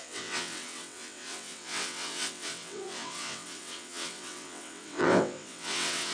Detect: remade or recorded remade